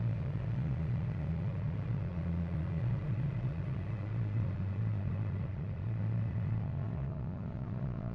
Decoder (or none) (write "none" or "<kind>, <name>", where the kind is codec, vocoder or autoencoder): vocoder, Vocos